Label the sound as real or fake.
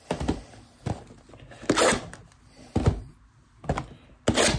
real